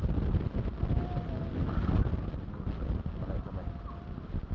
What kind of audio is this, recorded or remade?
recorded